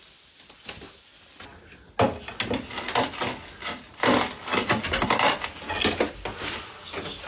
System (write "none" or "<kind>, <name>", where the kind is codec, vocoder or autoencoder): none